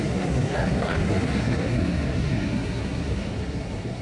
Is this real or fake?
fake